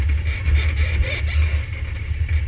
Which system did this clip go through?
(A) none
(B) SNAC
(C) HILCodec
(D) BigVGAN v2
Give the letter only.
A